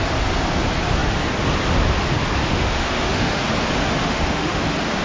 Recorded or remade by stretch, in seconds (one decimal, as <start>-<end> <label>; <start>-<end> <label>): 0.0-2.5 recorded; 2.5-3.4 remade; 3.4-4.0 recorded; 4.0-4.6 remade; 4.6-5.0 recorded

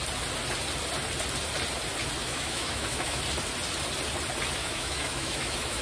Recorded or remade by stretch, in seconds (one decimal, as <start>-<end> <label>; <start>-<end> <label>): 0.0-2.2 recorded; 2.2-3.2 remade; 3.2-4.6 recorded; 4.6-5.8 remade